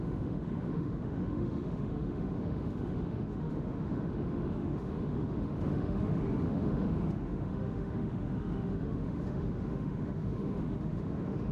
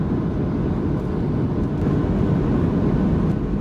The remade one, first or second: first